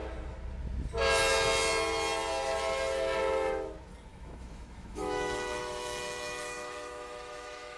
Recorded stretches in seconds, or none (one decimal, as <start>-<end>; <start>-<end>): 0.0-4.1